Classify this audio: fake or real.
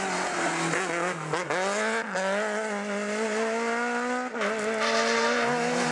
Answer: real